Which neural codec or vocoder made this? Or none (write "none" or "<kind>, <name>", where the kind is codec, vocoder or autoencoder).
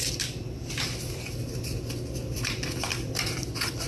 vocoder, BigVGAN v2